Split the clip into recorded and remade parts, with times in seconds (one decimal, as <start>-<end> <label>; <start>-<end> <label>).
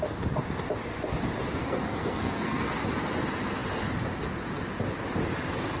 0.0-1.6 recorded; 1.6-2.7 remade; 2.7-5.8 recorded